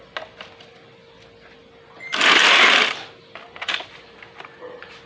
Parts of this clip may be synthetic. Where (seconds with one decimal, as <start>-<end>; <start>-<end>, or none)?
none